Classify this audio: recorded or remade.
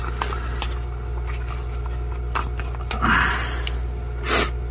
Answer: recorded